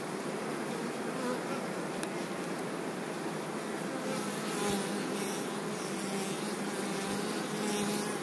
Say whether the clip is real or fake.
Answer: real